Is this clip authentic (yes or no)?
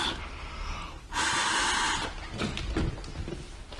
yes